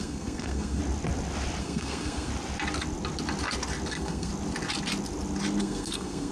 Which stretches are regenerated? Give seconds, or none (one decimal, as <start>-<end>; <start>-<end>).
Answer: 0.0-0.8; 1.6-2.3; 3.9-4.3; 5.6-6.3